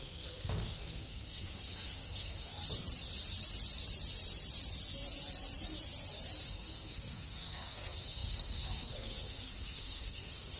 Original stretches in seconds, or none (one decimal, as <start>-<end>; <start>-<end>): 2.6-6.5

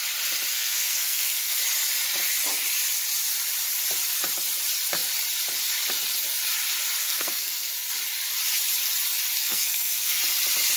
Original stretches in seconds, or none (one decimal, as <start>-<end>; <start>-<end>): 0.0-0.5; 1.6-7.0; 7.7-9.4; 10.2-10.8

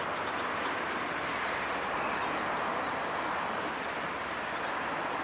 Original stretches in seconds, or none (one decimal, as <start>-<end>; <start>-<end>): 0.0-5.2

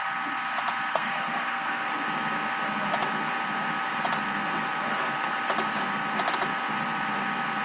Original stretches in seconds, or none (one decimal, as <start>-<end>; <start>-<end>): 0.0-0.9; 1.9-7.6

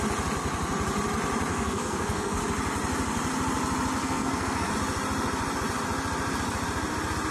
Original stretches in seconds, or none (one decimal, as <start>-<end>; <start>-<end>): 0.0-1.5; 2.4-4.0; 4.7-7.3